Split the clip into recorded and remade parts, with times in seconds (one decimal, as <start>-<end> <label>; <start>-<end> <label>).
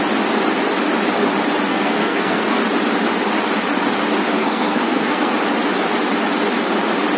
0.0-1.7 recorded; 1.7-2.6 remade; 2.6-4.4 recorded; 4.4-5.3 remade; 5.3-7.2 recorded